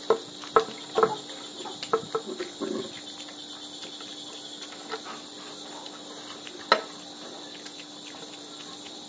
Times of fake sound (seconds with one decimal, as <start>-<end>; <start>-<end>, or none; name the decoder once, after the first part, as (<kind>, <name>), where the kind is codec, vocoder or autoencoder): none